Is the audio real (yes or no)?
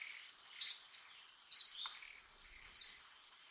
yes